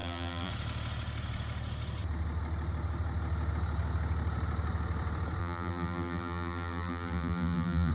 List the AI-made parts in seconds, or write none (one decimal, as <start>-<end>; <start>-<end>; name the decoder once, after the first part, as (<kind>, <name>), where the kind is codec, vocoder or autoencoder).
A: 0.0-0.5 (vocoder, BigVGAN v2); 5.4-7.9